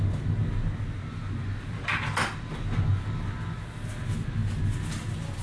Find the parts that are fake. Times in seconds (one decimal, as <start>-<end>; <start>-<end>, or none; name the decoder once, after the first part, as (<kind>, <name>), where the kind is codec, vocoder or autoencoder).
none